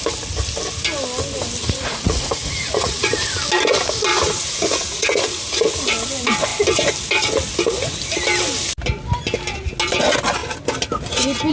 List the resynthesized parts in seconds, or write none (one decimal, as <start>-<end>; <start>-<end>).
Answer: 1.6-3.3; 4.1-5.7